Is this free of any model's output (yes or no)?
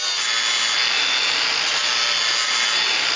yes